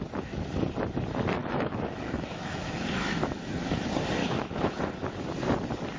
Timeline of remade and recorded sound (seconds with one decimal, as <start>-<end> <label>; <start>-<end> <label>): 0.0-1.4 recorded; 1.4-3.4 remade; 3.4-4.2 recorded; 4.2-4.8 remade; 4.8-6.0 recorded